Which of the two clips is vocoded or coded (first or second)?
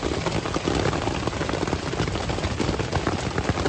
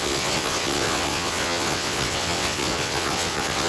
second